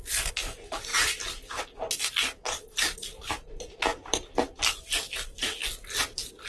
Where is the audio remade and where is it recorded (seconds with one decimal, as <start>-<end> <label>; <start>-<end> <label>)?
0.0-0.9 recorded; 0.9-1.6 remade; 1.6-3.9 recorded; 3.9-4.9 remade; 4.9-6.5 recorded